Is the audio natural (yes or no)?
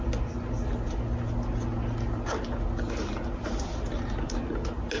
yes